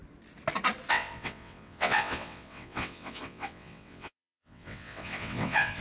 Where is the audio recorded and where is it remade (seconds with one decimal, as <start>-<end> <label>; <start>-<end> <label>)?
0.0-0.9 recorded; 0.9-5.8 remade